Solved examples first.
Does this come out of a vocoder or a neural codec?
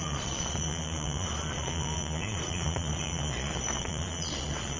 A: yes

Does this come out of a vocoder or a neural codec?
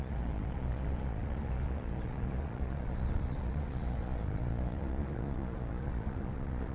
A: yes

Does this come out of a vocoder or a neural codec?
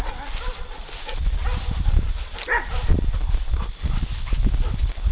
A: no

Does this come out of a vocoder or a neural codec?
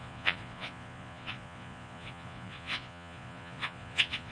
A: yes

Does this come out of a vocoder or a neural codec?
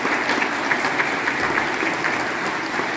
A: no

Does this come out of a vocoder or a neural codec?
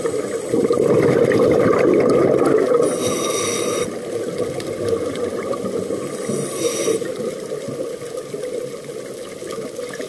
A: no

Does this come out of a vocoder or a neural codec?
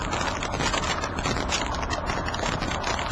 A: no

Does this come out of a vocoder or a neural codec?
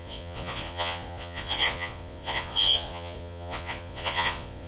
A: yes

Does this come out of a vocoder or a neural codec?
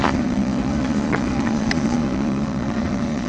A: yes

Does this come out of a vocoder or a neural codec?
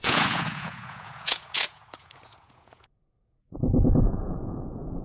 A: yes